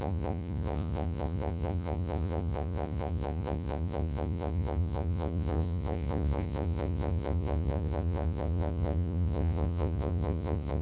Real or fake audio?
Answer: fake